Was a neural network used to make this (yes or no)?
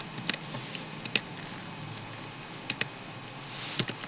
no